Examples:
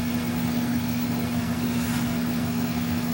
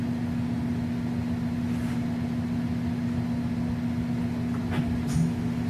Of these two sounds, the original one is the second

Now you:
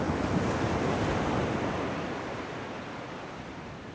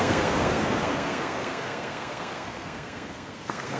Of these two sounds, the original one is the first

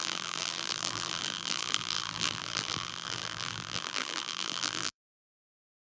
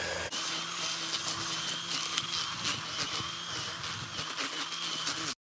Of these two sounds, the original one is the second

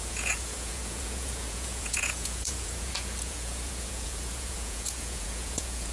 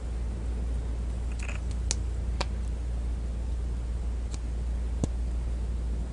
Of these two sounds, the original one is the second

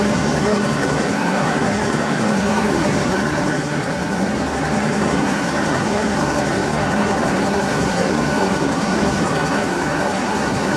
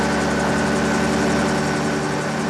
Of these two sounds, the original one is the second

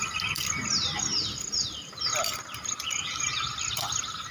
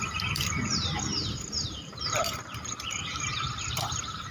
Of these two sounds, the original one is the first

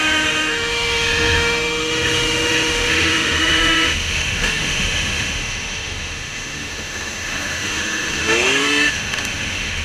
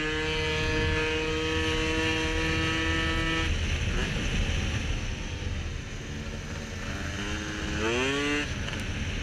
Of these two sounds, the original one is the second